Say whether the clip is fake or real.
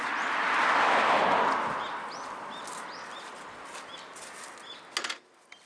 real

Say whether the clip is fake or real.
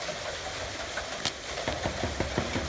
real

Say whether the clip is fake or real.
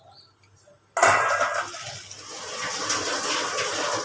real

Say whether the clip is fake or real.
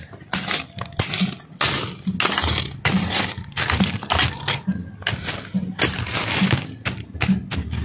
real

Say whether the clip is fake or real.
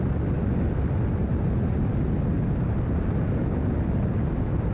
real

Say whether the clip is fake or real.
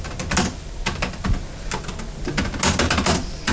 real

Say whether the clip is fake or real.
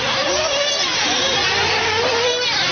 real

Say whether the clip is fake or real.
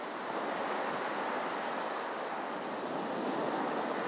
real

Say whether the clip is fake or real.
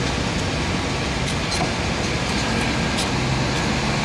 real